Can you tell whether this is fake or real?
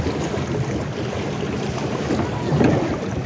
real